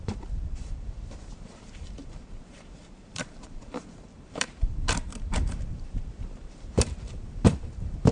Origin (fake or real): fake